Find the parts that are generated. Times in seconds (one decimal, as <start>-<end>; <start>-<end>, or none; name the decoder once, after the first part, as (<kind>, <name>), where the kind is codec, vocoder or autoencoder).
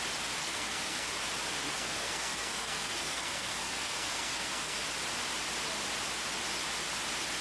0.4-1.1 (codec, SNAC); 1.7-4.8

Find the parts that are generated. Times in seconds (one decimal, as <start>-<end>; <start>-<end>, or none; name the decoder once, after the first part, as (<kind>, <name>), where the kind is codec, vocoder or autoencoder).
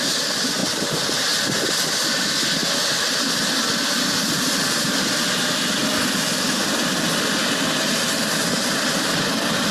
none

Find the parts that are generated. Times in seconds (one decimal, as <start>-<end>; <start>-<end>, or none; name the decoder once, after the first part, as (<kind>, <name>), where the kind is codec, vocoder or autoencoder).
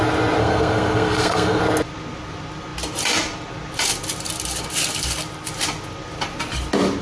0.4-1.6 (codec, SNAC)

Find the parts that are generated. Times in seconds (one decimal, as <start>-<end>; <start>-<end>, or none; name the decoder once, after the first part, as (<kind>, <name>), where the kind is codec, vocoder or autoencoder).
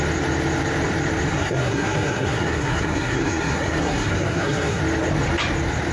1.3-4.8 (codec, SNAC)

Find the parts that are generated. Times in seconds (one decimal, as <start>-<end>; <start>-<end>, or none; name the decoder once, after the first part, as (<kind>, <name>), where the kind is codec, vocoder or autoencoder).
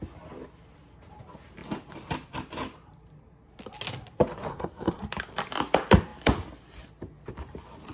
4.5-5.0 (codec, SNAC)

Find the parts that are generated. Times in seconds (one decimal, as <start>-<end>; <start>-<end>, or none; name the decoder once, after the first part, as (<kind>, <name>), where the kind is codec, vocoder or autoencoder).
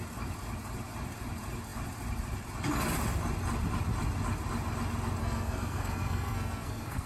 5.2-7.1 (codec, SNAC)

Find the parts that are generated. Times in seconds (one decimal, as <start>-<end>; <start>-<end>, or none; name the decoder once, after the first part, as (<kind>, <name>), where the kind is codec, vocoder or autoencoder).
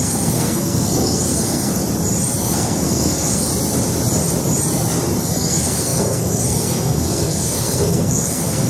0.0-1.8 (codec, SNAC); 2.4-3.5; 5.2-8.7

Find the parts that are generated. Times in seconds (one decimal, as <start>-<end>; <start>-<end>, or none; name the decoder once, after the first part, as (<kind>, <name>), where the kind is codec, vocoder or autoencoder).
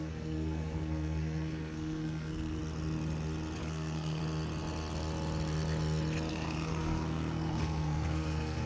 0.0-2.6 (codec, SNAC); 3.6-4.2; 6.3-8.7